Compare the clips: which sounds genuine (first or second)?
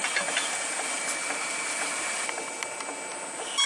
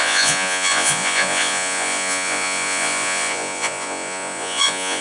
first